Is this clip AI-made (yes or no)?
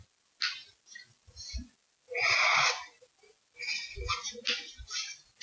no